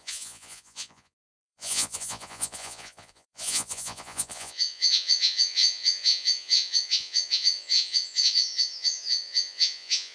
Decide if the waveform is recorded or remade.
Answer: remade